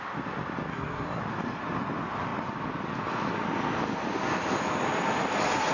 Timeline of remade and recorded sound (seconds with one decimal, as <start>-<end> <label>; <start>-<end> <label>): 0.0-0.7 recorded; 0.7-1.2 remade; 1.2-5.7 recorded